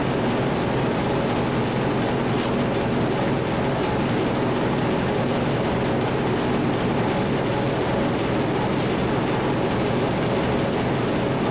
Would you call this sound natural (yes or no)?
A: yes